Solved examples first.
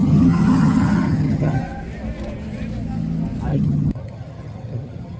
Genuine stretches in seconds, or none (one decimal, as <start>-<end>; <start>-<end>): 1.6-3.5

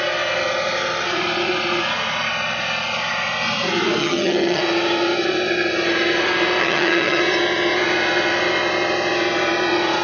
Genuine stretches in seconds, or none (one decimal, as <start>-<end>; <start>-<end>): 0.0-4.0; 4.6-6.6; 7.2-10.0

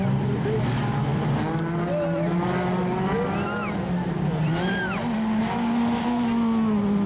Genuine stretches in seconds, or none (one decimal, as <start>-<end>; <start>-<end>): 0.0-7.1